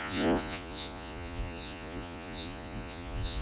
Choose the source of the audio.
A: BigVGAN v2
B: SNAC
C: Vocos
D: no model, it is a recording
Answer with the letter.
C